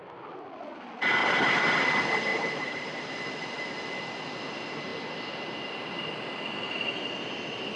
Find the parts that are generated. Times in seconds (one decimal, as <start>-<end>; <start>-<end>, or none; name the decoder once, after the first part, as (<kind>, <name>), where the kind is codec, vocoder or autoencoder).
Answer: 1.2-1.9 (vocoder, BigVGAN v2); 2.3-3.1